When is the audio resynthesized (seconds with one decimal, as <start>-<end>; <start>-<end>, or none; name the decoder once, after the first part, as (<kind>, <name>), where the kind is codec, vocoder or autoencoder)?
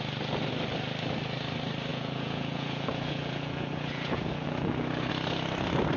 1.9-5.1 (vocoder, Vocos)